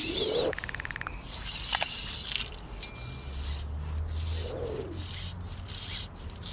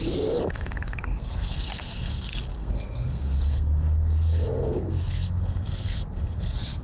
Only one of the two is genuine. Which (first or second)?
first